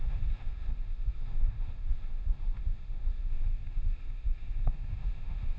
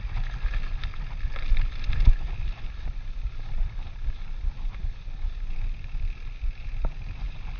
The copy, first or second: first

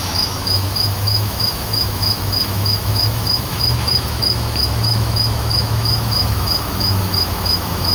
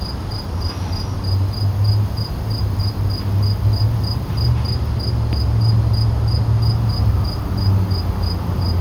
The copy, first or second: first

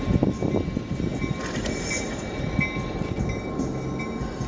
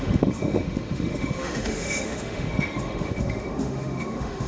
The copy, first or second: second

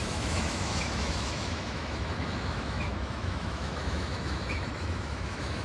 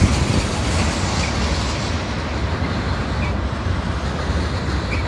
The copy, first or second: first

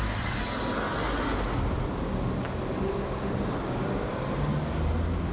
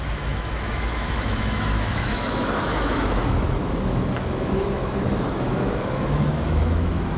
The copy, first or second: second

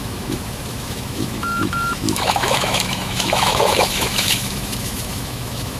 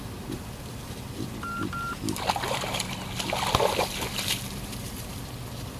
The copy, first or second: first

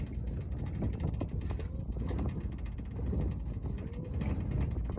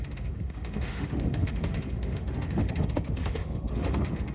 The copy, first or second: second